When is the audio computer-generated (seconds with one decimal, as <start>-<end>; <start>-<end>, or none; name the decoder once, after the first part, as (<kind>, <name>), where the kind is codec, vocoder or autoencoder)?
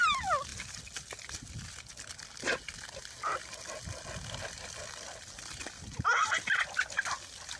none